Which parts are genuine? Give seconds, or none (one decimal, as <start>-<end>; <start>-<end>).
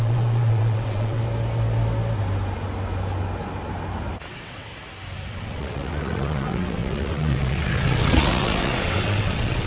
1.2-4.3; 4.7-5.3